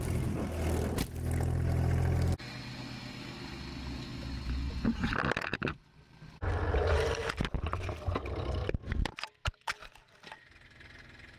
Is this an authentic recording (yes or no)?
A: yes